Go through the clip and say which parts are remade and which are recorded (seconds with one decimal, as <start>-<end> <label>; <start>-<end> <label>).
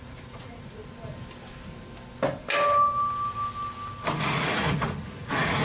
0.0-0.8 remade; 0.8-4.2 recorded; 4.2-5.6 remade